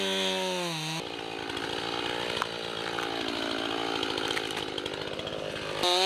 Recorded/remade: recorded